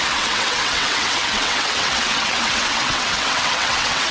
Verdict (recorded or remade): remade